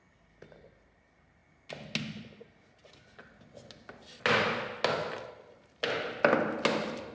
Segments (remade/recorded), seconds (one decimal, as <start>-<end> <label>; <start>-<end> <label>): 0.0-7.1 recorded